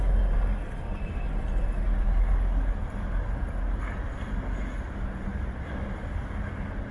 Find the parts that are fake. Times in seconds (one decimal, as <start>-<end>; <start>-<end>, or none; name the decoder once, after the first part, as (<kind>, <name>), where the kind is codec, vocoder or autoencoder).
none